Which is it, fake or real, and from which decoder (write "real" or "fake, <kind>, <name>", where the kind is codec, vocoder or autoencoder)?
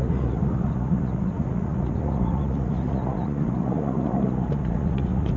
fake, vocoder, Vocos